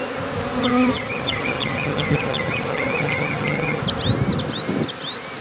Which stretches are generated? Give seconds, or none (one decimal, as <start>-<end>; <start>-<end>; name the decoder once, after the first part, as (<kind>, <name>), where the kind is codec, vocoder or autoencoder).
0.6-3.8 (vocoder, HiFi-GAN)